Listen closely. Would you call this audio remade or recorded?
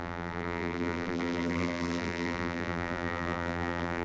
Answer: remade